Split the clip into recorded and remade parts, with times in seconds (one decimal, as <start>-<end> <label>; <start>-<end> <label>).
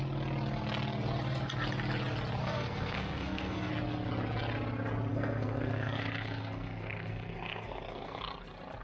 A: 0.0-2.4 recorded; 2.4-3.7 remade; 3.7-5.1 recorded; 5.1-8.2 remade; 8.2-8.8 recorded